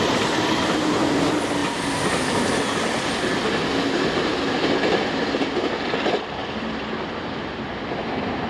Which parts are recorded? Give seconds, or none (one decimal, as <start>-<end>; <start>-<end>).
0.0-8.5